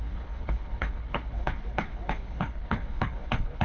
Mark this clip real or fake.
fake